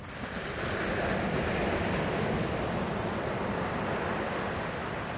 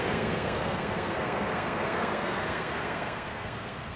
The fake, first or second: second